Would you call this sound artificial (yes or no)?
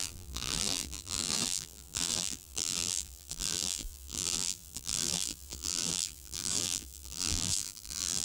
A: yes